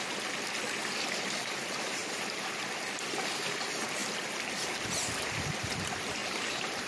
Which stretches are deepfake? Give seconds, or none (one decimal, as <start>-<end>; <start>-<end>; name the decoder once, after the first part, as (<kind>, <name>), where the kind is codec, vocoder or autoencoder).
2.0-2.6 (vocoder, BigVGAN v2); 6.2-6.9